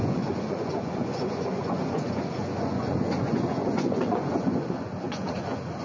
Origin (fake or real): fake